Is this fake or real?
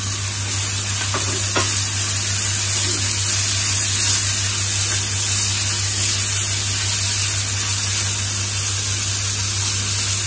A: real